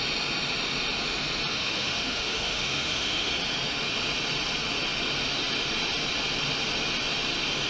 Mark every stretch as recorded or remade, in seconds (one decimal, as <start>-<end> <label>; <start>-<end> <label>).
0.0-1.5 recorded; 1.5-3.3 remade; 3.3-7.7 recorded